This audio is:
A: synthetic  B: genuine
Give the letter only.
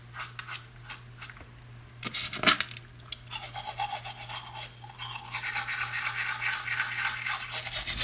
B